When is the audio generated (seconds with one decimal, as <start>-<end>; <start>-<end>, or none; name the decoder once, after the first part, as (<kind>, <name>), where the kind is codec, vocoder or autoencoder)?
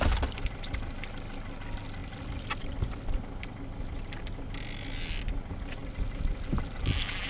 none